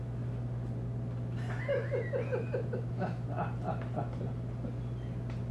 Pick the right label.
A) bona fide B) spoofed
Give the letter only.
A